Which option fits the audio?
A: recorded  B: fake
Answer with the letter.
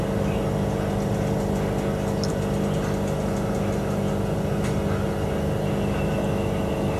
A